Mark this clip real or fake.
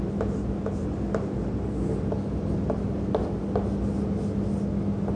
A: real